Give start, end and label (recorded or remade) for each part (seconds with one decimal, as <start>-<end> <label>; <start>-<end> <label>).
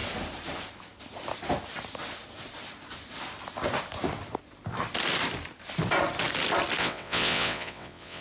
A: 0.0-6.8 recorded; 6.8-8.2 remade